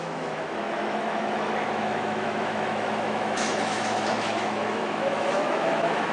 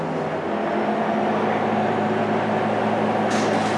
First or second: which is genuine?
second